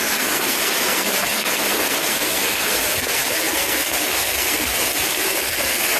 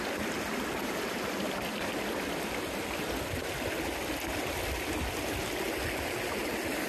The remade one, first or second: first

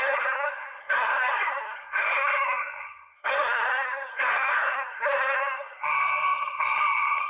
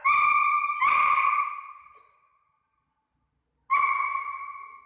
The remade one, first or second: first